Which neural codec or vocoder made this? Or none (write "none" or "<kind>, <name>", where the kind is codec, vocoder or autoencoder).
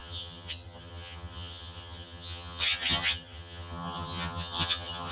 vocoder, HiFi-GAN